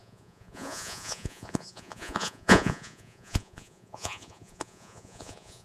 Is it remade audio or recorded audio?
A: remade